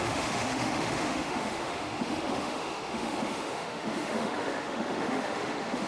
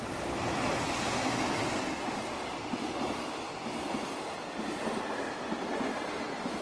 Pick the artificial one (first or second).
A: first